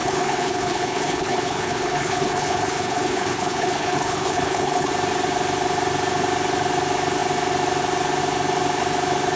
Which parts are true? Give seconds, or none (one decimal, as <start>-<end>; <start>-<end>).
4.9-9.4